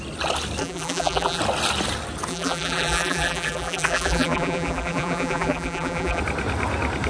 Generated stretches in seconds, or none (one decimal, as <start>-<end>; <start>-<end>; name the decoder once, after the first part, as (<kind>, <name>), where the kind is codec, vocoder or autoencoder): 0.6-1.4 (vocoder, BigVGAN v2); 2.3-6.2